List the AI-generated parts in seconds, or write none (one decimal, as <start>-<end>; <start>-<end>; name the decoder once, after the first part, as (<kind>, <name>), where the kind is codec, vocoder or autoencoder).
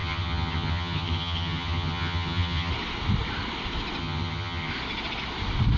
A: 0.0-2.7 (vocoder, HiFi-GAN); 4.0-4.7